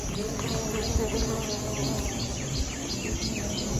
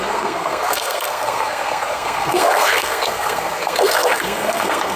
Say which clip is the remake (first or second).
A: second